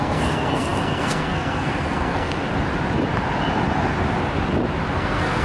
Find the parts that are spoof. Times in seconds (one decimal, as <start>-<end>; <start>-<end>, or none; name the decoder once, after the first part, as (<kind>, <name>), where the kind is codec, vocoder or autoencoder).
0.0-2.4 (codec, SNAC); 4.9-5.4